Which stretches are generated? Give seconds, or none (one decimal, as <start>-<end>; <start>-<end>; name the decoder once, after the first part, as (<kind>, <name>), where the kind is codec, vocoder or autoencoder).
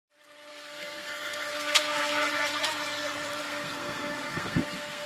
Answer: 0.5-2.3 (codec, SNAC); 3.4-5.1